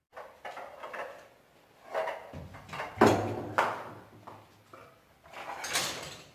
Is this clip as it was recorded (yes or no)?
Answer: yes